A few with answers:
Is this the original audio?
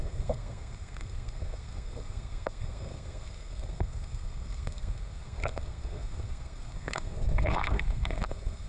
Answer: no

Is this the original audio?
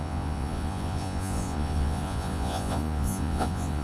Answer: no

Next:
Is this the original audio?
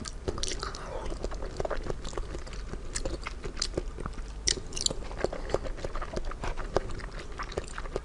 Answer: yes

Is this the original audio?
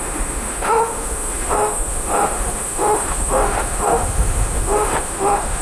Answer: no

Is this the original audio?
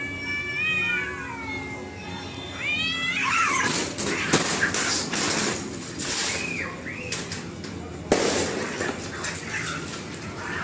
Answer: yes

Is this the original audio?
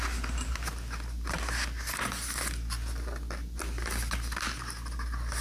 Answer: yes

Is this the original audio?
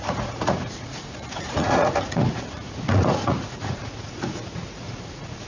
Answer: no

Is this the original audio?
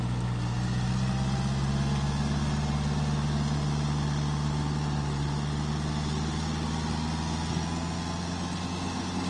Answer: yes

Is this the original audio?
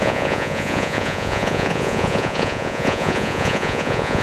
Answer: no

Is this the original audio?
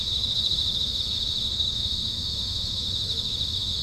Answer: no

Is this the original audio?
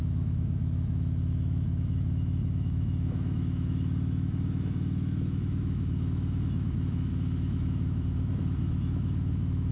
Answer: no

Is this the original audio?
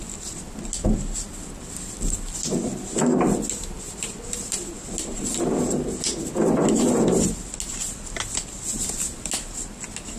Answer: yes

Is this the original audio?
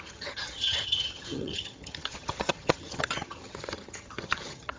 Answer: no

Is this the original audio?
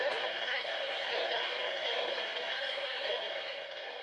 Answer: no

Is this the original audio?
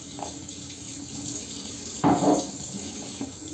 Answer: no